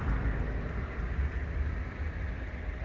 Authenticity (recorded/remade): recorded